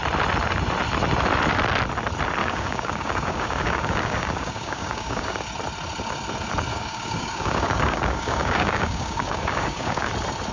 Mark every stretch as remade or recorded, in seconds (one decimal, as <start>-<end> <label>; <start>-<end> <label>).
0.0-2.4 recorded; 2.4-5.4 remade; 5.4-6.7 recorded; 6.7-10.1 remade; 10.1-10.5 recorded